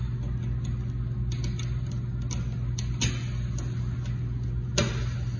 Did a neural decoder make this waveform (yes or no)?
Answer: no